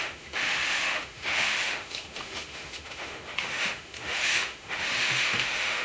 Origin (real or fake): fake